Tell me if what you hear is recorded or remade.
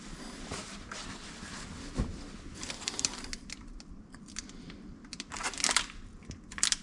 recorded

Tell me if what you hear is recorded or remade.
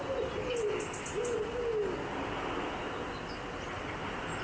recorded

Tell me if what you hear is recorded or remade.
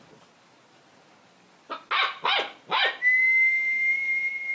recorded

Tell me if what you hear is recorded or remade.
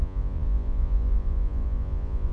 remade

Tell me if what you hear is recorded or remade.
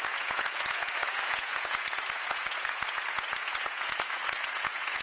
remade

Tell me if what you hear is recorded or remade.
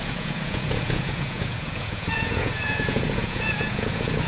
remade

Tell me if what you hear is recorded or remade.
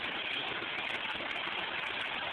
recorded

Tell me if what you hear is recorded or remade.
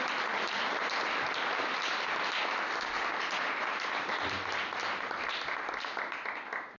recorded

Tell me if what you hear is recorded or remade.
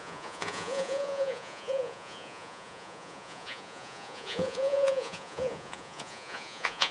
remade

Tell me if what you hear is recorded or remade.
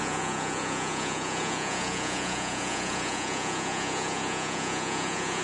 remade